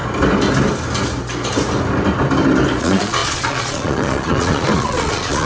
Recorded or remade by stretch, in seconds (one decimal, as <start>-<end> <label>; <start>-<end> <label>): 0.0-2.8 recorded; 2.8-5.5 remade